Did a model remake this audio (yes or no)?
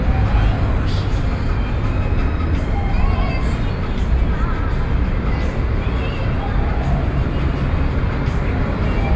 no